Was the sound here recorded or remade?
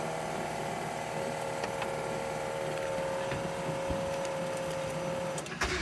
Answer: recorded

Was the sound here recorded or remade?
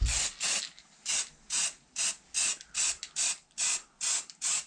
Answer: remade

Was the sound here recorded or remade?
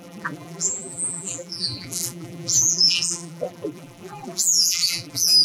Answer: remade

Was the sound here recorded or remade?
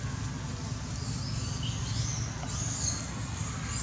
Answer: recorded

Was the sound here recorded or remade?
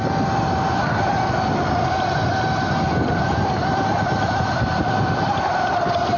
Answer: recorded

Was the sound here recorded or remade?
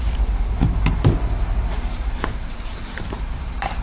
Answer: remade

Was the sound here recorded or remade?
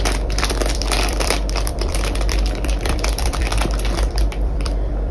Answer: remade